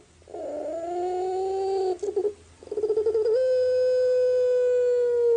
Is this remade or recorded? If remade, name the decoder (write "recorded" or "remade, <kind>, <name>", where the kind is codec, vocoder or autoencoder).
recorded